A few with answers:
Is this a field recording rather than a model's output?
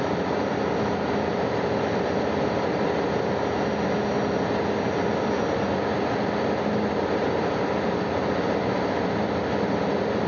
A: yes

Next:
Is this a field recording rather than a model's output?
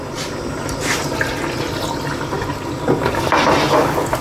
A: yes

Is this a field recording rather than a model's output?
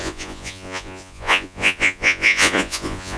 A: no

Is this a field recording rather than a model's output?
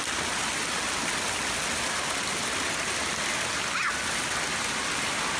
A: yes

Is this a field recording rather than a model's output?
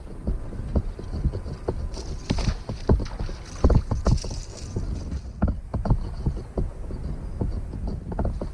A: yes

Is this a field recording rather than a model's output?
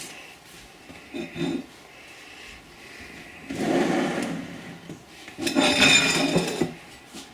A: yes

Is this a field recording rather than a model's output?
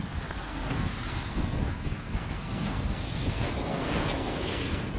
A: no